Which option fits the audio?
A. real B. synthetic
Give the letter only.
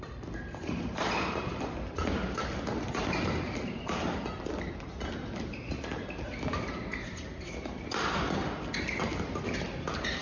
A